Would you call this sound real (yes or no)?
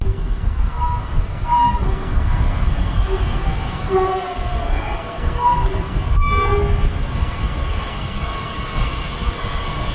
no